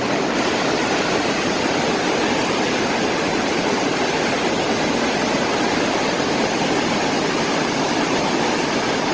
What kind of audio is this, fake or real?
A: real